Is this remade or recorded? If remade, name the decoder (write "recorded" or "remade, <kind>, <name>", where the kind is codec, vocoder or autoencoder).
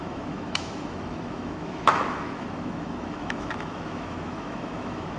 remade, autoencoder, DAC-VAE